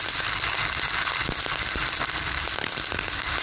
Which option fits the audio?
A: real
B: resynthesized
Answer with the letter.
A